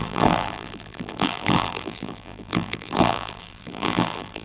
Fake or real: fake